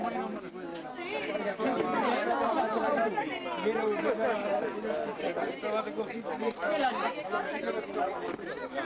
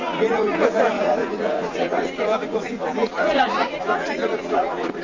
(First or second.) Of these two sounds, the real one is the first